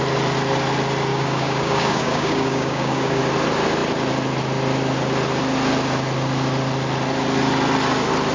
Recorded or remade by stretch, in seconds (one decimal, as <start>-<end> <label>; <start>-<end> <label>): 0.0-1.1 recorded; 1.1-3.2 remade; 3.2-8.3 recorded